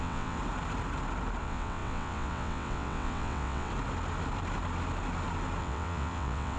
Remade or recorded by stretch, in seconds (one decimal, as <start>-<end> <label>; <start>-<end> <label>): 0.0-0.4 remade; 0.4-1.4 recorded; 1.4-3.7 remade; 3.7-5.6 recorded; 5.6-6.6 remade